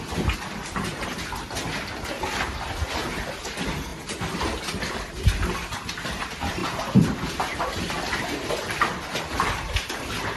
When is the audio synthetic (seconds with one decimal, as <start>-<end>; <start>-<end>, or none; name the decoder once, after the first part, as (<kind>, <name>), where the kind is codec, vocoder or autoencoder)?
none